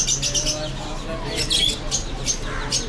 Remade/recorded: recorded